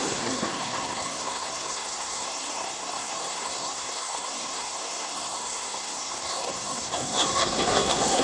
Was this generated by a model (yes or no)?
yes